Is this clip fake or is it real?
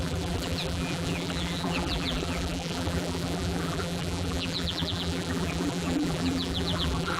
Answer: fake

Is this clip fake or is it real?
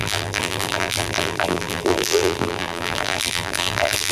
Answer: fake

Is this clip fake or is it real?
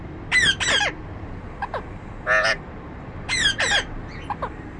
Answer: fake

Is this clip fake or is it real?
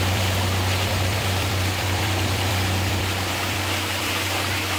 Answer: fake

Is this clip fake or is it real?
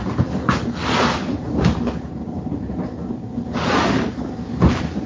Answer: real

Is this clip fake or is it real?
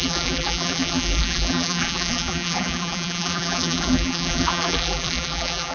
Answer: fake